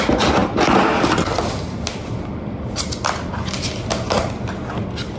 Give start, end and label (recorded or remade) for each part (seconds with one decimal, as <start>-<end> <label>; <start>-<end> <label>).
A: 0.0-5.2 recorded